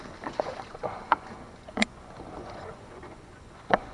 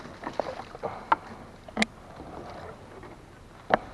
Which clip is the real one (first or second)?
second